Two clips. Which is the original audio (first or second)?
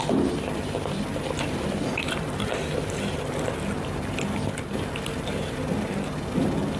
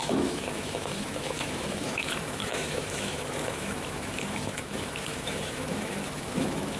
first